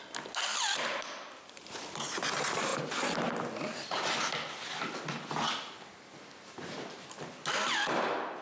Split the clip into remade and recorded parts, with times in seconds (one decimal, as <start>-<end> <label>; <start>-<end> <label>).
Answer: 0.0-8.4 recorded